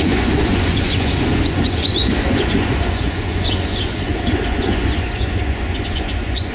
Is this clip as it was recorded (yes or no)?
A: no